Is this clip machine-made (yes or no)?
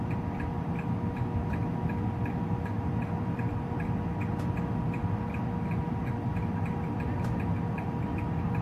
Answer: no